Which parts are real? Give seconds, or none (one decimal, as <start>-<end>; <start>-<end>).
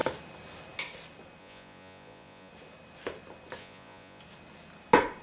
0.0-1.4; 2.5-3.6; 4.2-5.2